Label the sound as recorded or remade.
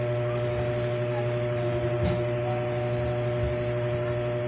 recorded